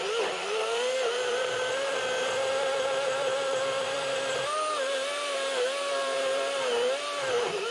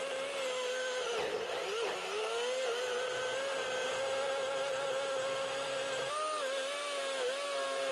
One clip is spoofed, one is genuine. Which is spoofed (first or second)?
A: first